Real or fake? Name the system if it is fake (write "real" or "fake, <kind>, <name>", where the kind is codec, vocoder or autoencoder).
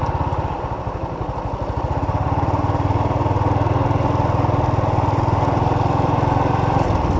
real